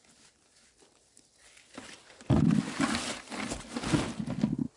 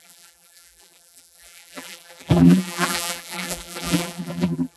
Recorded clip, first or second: first